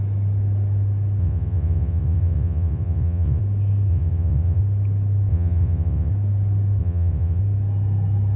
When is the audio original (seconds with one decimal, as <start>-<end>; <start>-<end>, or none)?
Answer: 0.0-1.2; 3.4-3.9; 4.6-5.3; 6.1-6.8; 7.4-8.4